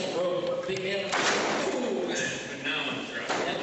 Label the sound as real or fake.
real